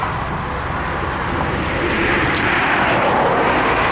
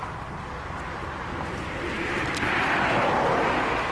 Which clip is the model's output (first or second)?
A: second